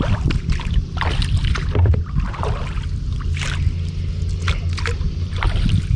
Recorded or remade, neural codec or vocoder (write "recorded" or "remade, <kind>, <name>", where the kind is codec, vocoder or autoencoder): recorded